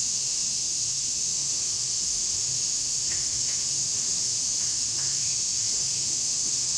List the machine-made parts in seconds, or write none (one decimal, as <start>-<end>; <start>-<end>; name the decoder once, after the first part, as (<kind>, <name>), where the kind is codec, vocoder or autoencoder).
0.0-6.8 (autoencoder, DAC-VAE)